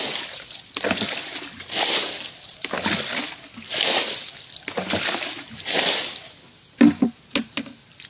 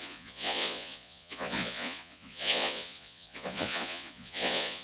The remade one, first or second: second